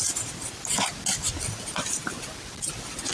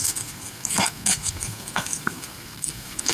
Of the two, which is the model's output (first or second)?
second